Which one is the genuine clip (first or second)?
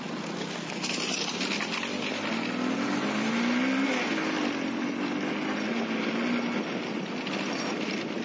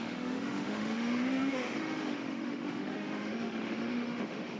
first